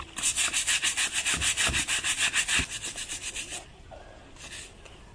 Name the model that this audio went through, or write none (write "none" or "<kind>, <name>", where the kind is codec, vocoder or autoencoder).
none